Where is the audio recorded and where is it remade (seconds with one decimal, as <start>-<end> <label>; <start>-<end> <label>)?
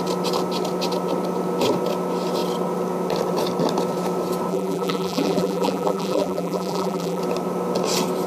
0.0-4.5 recorded; 4.5-7.2 remade; 7.2-8.3 recorded